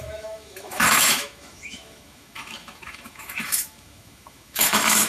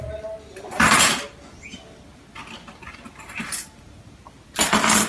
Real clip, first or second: second